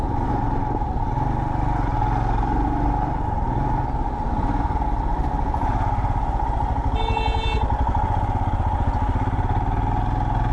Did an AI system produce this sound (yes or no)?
no